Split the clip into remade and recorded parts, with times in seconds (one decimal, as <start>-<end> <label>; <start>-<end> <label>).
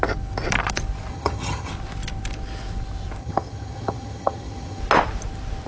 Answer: 0.0-1.1 recorded; 1.1-1.7 remade; 1.7-3.2 recorded; 3.2-4.8 remade; 4.8-5.7 recorded